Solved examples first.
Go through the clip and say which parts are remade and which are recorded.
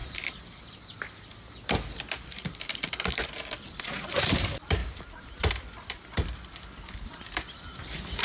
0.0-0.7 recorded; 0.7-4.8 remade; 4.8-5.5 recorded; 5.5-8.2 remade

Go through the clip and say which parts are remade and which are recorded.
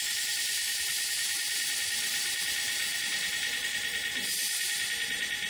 0.0-2.8 recorded; 2.8-3.6 remade; 3.6-5.5 recorded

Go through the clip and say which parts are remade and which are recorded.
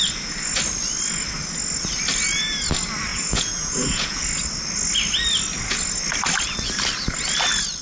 0.0-3.1 recorded; 3.1-4.2 remade; 4.2-7.8 recorded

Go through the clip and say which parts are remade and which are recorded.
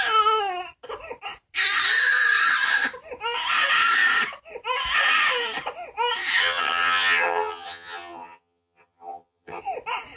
0.0-6.4 recorded; 6.4-9.6 remade; 9.6-10.2 recorded